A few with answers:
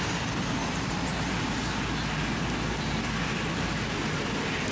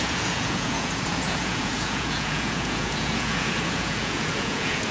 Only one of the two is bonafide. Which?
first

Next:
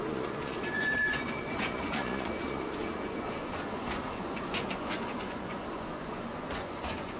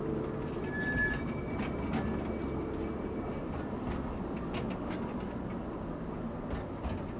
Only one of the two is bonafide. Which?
second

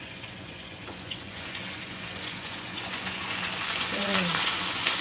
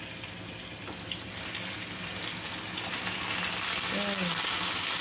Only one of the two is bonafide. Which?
second